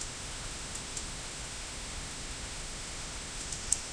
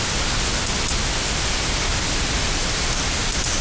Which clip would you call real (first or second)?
second